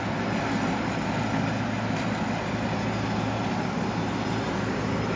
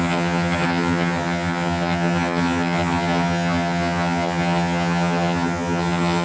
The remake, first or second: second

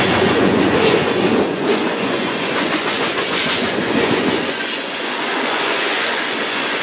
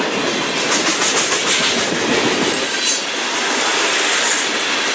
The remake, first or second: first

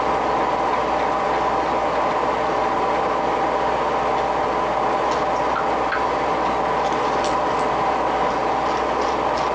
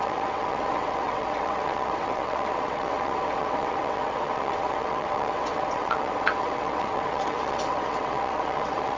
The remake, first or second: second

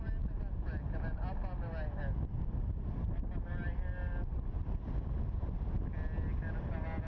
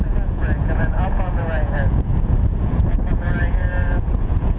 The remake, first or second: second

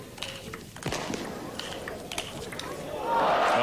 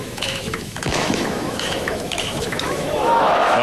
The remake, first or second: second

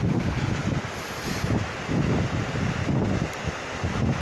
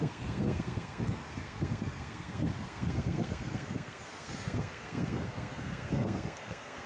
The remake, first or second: second